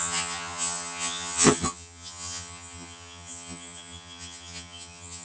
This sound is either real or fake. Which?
fake